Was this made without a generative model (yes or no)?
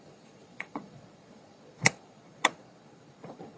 no